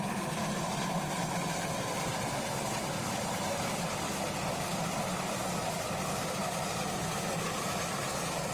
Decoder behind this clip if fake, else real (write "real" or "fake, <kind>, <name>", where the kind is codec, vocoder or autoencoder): real